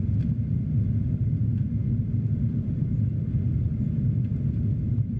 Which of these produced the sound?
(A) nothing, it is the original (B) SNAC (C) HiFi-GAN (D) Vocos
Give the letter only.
A